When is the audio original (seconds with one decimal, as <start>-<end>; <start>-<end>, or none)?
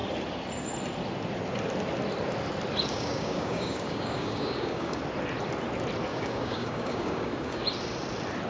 0.0-2.9; 5.0-6.1; 7.6-8.5